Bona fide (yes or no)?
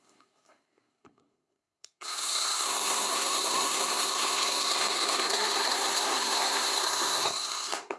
no